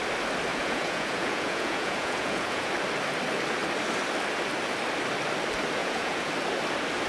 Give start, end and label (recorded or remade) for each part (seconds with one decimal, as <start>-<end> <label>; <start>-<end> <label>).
0.0-0.5 recorded; 0.5-2.7 remade; 2.7-5.8 recorded; 5.8-6.3 remade; 6.3-7.1 recorded